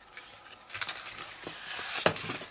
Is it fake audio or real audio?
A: real